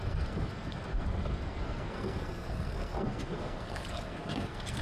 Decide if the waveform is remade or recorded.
remade